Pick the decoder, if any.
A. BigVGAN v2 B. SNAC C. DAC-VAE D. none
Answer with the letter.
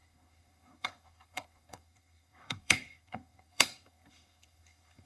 B